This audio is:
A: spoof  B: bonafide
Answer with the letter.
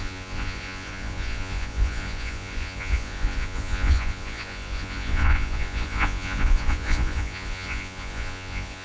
A